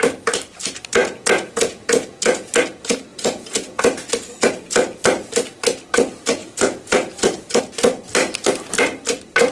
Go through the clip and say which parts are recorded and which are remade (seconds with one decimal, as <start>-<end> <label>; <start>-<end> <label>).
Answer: 0.0-1.0 recorded; 1.0-2.5 remade; 2.5-3.1 recorded; 3.1-3.8 remade; 3.8-6.4 recorded; 6.4-7.6 remade; 7.6-9.5 recorded

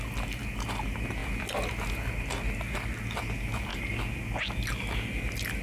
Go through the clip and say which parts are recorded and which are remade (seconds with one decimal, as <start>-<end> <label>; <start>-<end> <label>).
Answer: 0.0-5.6 recorded

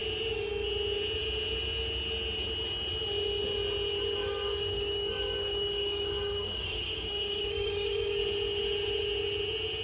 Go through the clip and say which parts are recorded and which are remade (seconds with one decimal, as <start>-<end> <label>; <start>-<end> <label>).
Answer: 0.0-4.2 recorded; 4.2-8.2 remade; 8.2-9.8 recorded

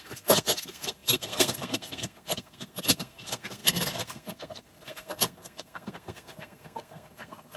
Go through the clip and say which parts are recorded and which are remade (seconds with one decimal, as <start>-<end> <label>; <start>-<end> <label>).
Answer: 0.0-7.6 remade

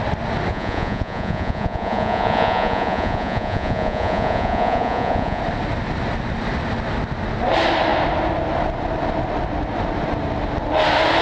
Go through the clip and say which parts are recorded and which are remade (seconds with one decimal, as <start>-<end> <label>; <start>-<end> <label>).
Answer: 0.0-0.5 recorded; 0.5-5.4 remade; 5.4-11.2 recorded

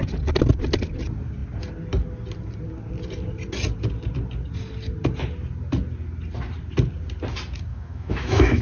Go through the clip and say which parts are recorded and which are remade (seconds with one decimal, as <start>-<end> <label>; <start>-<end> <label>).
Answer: 0.0-7.7 recorded; 7.7-8.6 remade

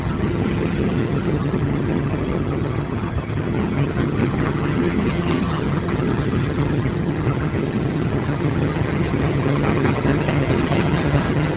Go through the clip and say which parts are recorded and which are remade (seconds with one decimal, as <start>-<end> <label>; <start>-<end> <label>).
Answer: 0.0-11.6 remade